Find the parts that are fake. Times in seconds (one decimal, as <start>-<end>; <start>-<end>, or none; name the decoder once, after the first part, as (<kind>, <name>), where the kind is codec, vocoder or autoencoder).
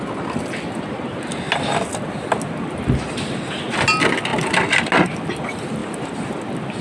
none